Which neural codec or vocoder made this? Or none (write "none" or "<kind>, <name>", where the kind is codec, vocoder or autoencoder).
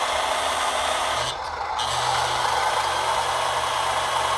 none